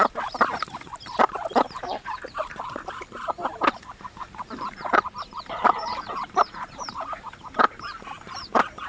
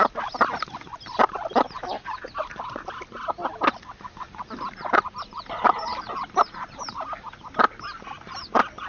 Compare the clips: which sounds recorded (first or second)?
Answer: second